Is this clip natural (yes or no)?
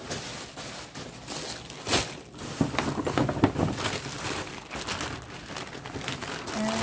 yes